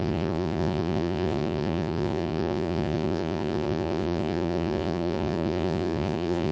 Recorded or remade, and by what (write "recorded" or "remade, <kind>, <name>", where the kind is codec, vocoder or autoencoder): remade, vocoder, Vocos